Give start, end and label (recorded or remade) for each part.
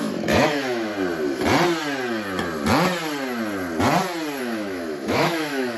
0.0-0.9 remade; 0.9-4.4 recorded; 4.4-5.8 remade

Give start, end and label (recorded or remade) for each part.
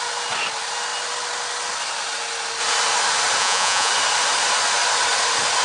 0.0-3.4 recorded; 3.4-3.9 remade; 3.9-5.6 recorded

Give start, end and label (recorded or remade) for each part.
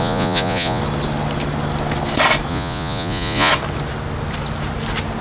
0.0-0.8 remade; 0.8-2.5 recorded; 2.5-3.5 remade; 3.5-5.2 recorded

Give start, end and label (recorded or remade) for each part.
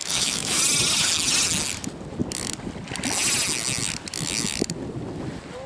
0.0-0.6 remade; 0.6-5.7 recorded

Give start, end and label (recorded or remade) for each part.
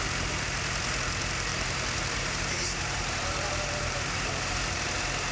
0.0-1.5 recorded; 1.5-4.7 remade; 4.7-5.3 recorded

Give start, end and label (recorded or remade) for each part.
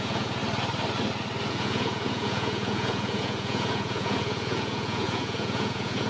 0.0-0.4 remade; 0.4-1.5 recorded; 1.5-6.1 remade